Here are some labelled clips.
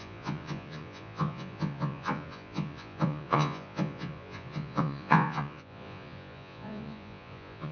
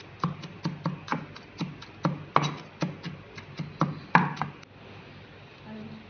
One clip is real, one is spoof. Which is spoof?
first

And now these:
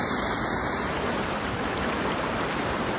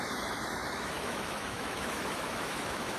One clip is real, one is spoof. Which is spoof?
second